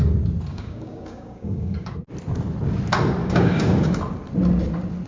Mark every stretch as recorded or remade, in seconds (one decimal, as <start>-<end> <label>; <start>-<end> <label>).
0.0-0.5 recorded; 0.5-1.9 remade; 1.9-3.2 recorded; 3.2-4.0 remade; 4.0-5.1 recorded